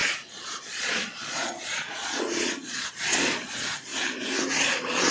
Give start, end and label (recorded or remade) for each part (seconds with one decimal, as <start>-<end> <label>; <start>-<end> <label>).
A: 0.0-3.9 remade; 3.9-4.5 recorded; 4.5-5.1 remade